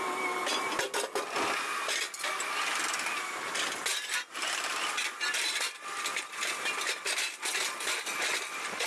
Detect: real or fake real